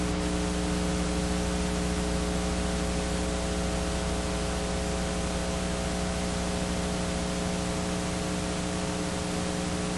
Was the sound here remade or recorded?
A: recorded